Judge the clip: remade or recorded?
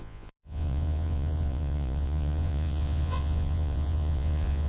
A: remade